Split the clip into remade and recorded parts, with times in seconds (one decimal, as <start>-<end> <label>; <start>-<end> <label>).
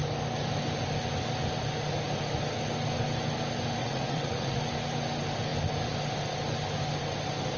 0.0-3.8 recorded; 3.8-4.6 remade; 4.6-7.6 recorded